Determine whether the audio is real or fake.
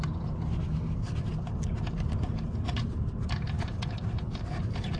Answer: real